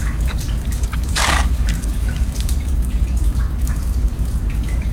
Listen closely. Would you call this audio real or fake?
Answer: fake